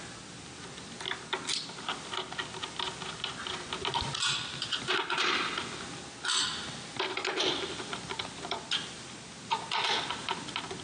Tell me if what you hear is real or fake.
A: real